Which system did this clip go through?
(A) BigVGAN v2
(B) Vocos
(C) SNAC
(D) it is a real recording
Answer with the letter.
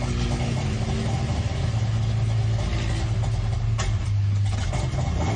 D